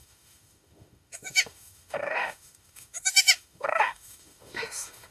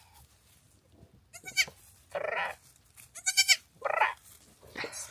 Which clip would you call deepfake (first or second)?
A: first